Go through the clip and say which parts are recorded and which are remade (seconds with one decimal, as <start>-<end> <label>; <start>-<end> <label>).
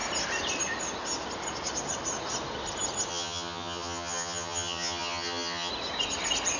0.0-3.1 recorded; 3.1-5.7 remade; 5.7-6.6 recorded